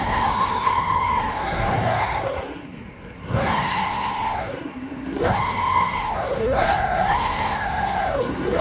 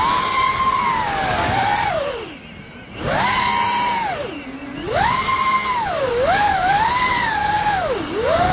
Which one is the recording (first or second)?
second